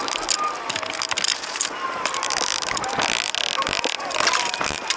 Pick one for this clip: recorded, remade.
recorded